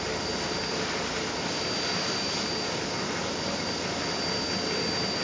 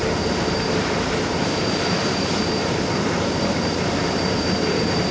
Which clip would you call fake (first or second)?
second